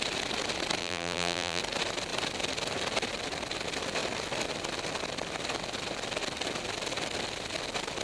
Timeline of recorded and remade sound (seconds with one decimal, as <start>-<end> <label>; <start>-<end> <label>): 0.0-0.8 recorded; 0.8-1.6 remade; 1.6-8.0 recorded